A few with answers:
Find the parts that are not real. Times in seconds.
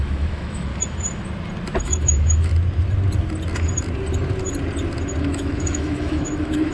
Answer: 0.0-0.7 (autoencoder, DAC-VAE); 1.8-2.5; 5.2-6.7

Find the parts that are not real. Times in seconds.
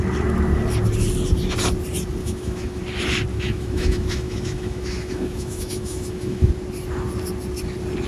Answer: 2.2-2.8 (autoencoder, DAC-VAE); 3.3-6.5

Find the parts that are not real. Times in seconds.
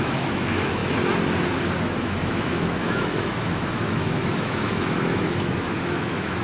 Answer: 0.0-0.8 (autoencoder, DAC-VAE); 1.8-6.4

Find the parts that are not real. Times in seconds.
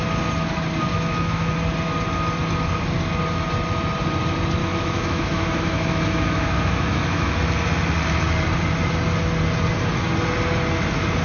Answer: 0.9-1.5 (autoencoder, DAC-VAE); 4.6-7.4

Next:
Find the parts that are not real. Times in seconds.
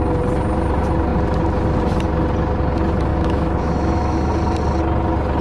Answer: 3.1-4.3 (autoencoder, DAC-VAE)